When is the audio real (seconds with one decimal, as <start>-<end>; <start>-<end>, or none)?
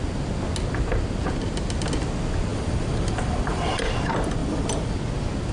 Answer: 0.0-2.5; 3.9-4.4; 4.9-5.5